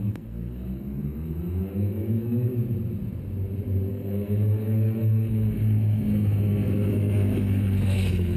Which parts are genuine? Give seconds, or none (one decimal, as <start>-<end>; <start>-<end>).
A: 2.5-3.9